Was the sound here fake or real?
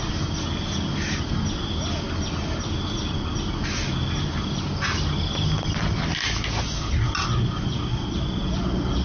real